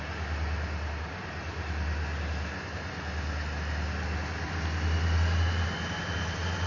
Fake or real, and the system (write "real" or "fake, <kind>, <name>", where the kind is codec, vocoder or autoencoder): real